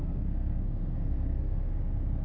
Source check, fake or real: fake